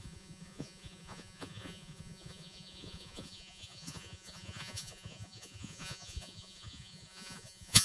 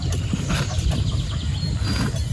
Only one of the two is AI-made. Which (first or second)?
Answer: first